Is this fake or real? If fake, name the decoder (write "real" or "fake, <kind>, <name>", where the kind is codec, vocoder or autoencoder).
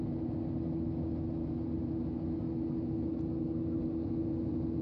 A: real